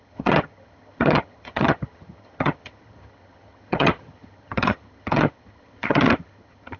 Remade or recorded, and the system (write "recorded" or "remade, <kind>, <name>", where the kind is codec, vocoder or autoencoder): remade, vocoder, HiFi-GAN